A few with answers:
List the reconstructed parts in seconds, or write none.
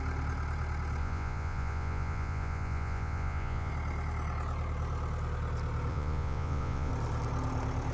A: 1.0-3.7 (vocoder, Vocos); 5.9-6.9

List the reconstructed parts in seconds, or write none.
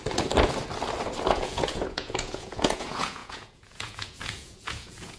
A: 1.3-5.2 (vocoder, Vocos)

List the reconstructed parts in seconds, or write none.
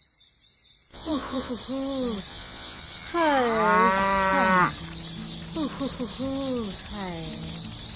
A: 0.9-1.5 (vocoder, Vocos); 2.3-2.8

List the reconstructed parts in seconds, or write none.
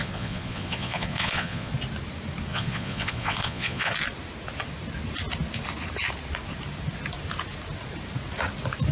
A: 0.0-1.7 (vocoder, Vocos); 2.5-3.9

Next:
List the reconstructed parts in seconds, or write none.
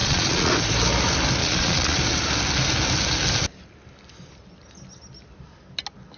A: 0.0-0.5 (vocoder, Vocos); 1.4-2.0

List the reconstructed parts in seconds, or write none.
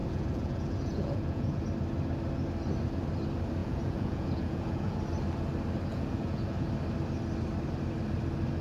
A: 0.0-1.6 (vocoder, Vocos); 3.6-5.0; 5.9-6.7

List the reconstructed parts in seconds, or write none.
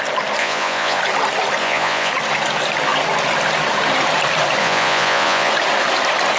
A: 0.4-1.0 (vocoder, Vocos); 1.6-2.1; 4.6-5.5